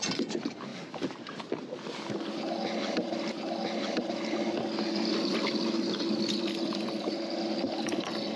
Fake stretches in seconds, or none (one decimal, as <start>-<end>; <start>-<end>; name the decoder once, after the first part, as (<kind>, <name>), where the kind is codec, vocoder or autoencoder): none

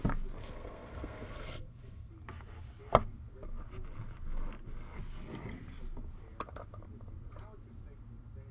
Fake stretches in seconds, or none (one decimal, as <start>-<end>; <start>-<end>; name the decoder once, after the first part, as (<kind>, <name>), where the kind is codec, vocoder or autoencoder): 0.4-2.1 (codec, SNAC)